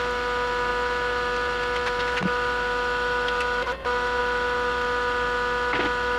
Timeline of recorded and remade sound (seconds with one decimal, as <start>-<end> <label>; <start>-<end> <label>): 0.0-6.2 recorded